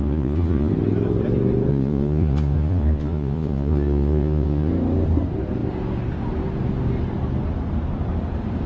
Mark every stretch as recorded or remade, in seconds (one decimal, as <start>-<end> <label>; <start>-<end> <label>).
0.0-0.7 remade; 0.7-1.7 recorded; 1.7-4.7 remade; 4.7-8.7 recorded